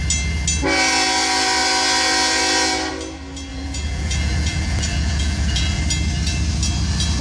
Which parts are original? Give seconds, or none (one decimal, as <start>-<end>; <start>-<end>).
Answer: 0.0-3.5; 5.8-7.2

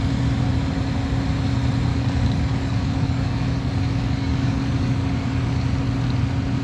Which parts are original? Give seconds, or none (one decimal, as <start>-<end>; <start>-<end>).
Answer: 0.0-1.9; 5.6-6.6

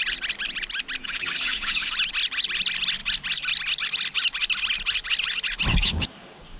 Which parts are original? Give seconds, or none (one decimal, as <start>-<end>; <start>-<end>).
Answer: 0.0-1.0; 1.9-5.7

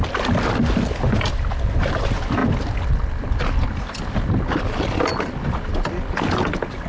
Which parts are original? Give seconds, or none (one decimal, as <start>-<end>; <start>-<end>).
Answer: 0.0-6.9

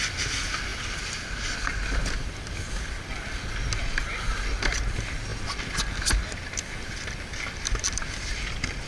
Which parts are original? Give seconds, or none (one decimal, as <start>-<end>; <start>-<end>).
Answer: 0.0-8.9

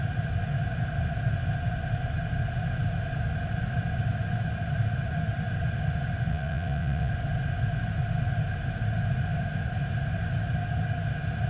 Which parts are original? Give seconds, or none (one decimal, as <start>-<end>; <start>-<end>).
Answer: 0.0-6.3; 7.1-11.5

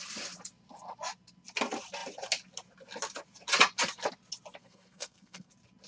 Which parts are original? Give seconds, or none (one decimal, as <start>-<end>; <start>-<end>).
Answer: 0.0-4.6; 5.5-5.9